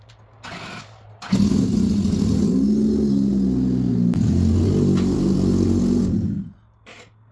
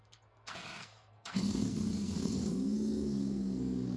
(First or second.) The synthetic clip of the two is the second